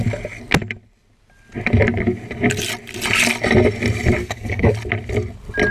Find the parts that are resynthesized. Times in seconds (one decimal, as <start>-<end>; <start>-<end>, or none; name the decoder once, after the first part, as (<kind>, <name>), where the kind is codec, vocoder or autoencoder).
4.2-4.7 (codec, SNAC)